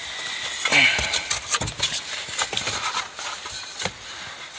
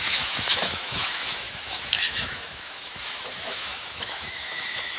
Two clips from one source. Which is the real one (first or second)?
first